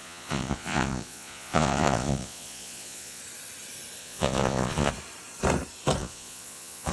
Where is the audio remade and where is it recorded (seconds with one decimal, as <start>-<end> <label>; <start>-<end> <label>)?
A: 0.0-3.2 remade; 3.2-4.0 recorded; 4.0-4.9 remade; 4.9-6.0 recorded; 6.0-6.9 remade